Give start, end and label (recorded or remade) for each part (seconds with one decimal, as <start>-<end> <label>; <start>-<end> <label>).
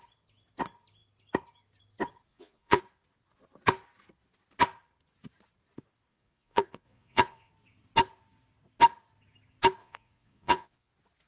0.0-2.3 recorded; 2.3-2.8 remade; 2.8-6.1 recorded; 6.1-7.5 remade; 7.5-9.8 recorded; 9.8-10.9 remade; 10.9-11.3 recorded